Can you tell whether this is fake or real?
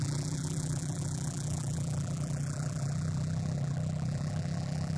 fake